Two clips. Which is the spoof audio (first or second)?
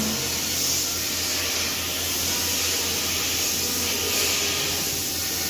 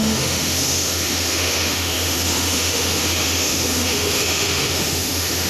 second